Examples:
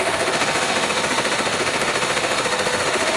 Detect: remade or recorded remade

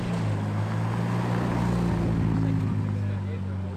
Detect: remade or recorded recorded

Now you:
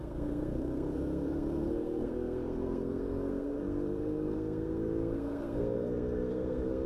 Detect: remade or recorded remade